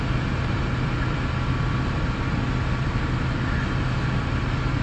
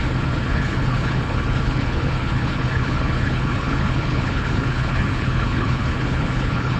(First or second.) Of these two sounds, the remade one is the second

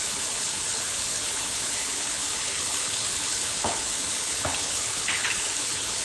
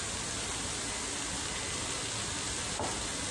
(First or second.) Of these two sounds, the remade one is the first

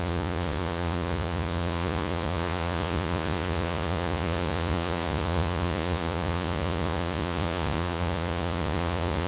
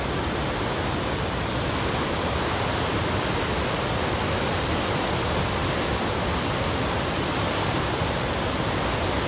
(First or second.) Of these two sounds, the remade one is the first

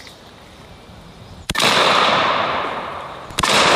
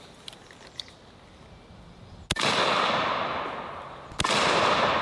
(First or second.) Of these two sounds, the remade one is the first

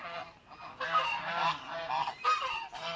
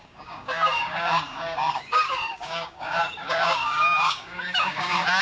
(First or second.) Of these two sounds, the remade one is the second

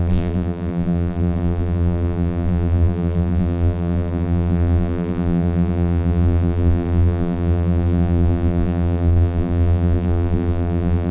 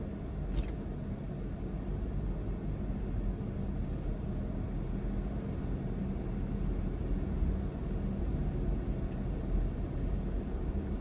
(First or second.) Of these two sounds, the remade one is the first